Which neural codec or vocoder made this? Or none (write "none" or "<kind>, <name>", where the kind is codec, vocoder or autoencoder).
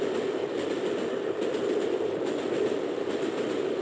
none